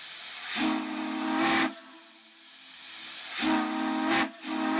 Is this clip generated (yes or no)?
no